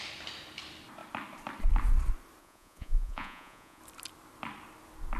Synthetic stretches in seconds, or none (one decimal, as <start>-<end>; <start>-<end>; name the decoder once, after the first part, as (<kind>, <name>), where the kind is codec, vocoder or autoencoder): 2.4-3.8 (vocoder, Vocos)